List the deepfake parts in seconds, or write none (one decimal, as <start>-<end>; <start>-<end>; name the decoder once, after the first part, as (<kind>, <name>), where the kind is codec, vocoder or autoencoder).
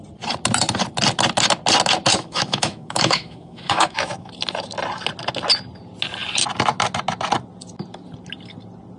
2.1-4.3 (autoencoder, DAC-VAE)